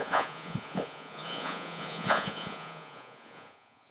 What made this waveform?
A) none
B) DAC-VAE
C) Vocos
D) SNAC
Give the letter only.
C